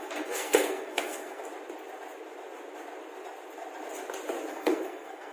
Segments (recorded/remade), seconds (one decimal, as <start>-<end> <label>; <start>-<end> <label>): 0.0-1.4 remade; 1.4-4.5 recorded; 4.5-5.3 remade